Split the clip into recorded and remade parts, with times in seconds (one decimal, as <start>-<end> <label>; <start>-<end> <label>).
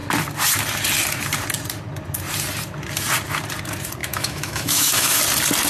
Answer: 0.0-4.0 recorded; 4.0-5.2 remade; 5.2-5.7 recorded